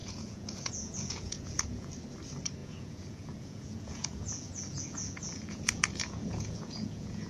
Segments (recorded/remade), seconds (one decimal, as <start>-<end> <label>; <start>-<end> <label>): 0.0-1.9 remade; 1.9-2.6 recorded; 2.6-7.3 remade